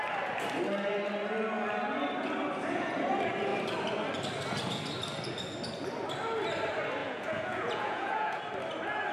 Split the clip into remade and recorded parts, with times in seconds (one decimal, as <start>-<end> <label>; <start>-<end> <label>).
0.0-7.0 recorded; 7.0-8.4 remade; 8.4-9.1 recorded